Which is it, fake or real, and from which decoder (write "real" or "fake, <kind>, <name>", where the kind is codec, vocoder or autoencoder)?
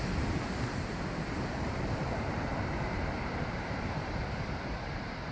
fake, vocoder, BigVGAN v2